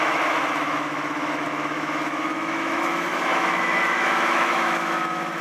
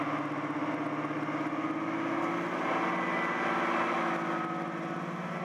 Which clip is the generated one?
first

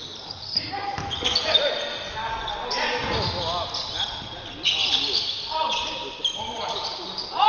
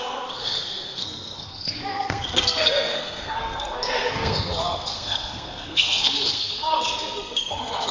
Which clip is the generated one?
second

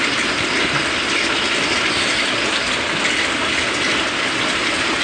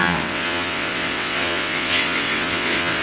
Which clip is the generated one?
second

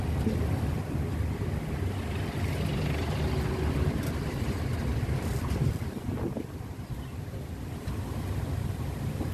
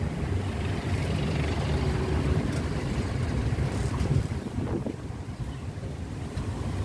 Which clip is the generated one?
second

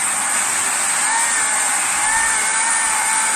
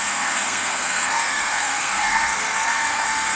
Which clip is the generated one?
second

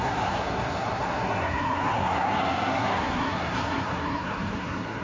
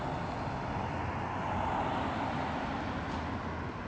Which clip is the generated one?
first